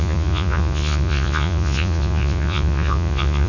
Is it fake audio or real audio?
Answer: fake